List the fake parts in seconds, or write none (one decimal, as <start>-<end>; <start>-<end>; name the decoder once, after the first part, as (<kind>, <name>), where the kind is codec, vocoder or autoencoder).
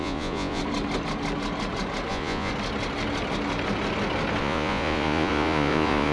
0.0-0.6 (vocoder, Vocos); 2.1-2.5; 4.4-6.1